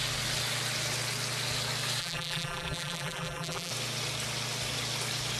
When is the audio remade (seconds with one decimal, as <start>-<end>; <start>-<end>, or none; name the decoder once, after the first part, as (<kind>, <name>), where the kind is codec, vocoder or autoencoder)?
2.0-3.7 (vocoder, BigVGAN v2)